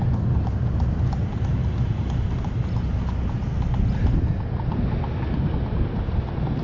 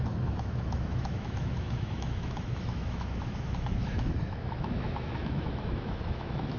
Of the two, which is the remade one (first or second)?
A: second